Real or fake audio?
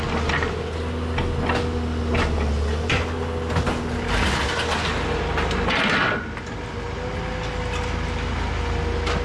real